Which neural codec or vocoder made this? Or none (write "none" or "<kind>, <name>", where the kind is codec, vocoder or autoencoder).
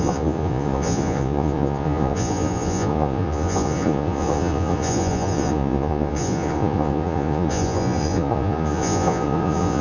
vocoder, Vocos